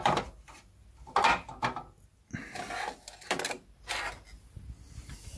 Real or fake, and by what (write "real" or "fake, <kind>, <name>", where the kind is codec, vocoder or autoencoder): real